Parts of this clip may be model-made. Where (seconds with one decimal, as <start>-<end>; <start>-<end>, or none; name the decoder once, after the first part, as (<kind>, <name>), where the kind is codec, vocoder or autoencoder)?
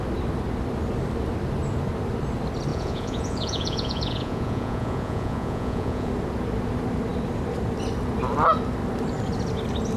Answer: 2.7-6.1 (vocoder, Vocos)